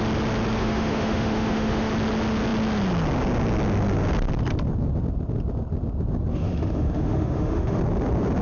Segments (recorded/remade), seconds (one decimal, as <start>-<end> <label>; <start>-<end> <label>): 0.0-0.6 recorded; 0.6-1.9 remade; 1.9-6.3 recorded; 6.3-7.8 remade; 7.8-8.4 recorded